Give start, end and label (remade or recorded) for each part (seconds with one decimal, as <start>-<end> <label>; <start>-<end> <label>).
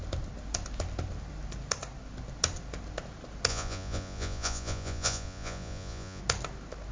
0.0-3.5 recorded; 3.5-6.2 remade; 6.2-6.9 recorded